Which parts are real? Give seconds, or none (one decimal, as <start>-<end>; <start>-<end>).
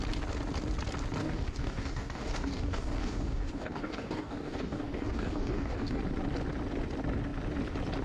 0.0-1.2; 6.0-8.0